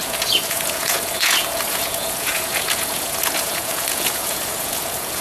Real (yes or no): no